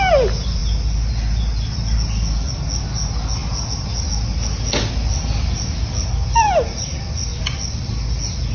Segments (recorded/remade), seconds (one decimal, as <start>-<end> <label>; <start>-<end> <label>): 0.0-8.5 recorded